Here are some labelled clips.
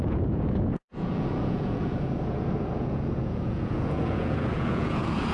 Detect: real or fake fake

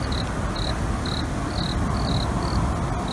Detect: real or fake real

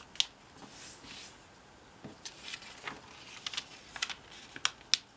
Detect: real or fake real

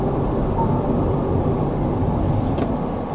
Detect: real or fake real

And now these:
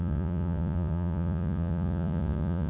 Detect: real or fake fake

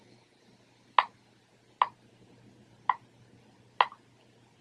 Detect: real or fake real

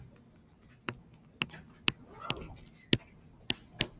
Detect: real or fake real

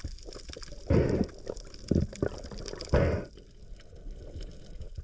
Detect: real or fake real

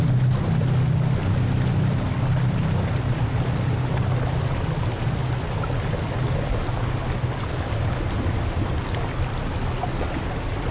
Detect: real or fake real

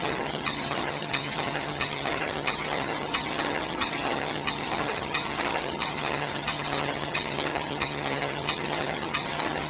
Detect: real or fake fake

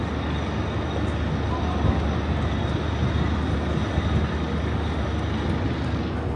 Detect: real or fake real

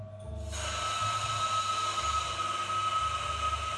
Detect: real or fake real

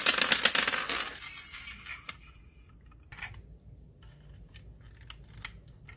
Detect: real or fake real